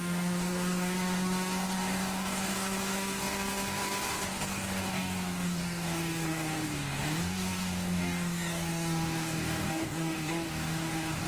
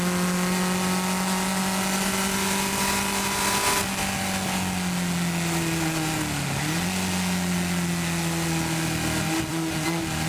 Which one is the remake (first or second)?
first